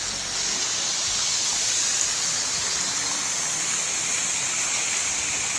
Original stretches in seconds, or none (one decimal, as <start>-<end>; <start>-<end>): 0.0-5.6